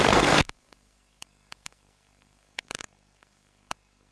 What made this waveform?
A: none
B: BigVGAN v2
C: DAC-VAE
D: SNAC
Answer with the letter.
D